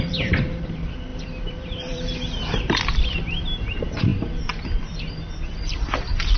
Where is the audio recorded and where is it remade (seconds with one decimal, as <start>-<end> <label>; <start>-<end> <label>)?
0.0-4.1 remade; 4.1-4.9 recorded; 4.9-6.4 remade